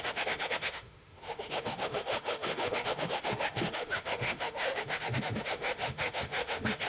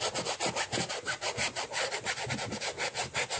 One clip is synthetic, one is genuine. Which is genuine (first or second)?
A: second